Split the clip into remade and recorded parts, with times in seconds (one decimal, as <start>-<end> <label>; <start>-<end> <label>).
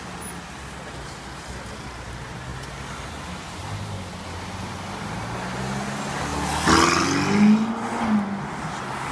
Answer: 0.0-9.1 recorded